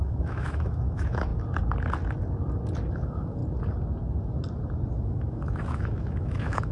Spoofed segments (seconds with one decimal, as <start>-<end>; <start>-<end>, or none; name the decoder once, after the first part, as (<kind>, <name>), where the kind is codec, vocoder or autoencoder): 0.0-1.3 (autoencoder, DAC-VAE); 2.9-3.4; 4.9-6.7